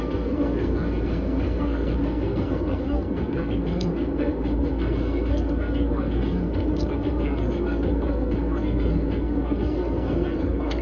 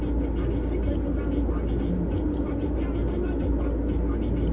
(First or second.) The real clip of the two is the second